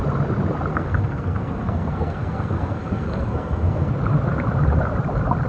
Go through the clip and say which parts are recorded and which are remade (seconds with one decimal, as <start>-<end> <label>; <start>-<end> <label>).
0.0-0.7 recorded; 0.7-3.9 remade; 3.9-5.5 recorded